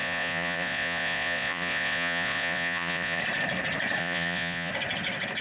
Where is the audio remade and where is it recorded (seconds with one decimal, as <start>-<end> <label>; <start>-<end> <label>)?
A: 0.0-3.2 remade; 3.2-4.0 recorded; 4.0-4.7 remade; 4.7-5.4 recorded